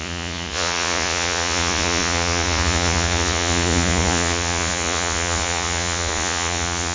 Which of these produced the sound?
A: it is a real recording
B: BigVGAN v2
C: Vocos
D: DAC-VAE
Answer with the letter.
C